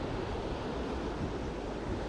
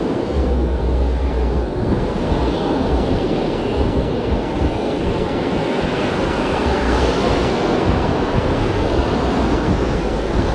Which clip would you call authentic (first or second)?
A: first